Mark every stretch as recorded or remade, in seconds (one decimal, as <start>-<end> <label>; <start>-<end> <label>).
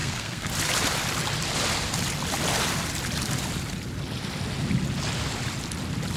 0.0-0.5 remade; 0.5-6.2 recorded